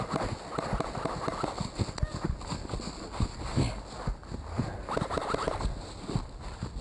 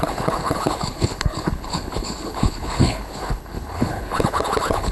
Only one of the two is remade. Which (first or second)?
second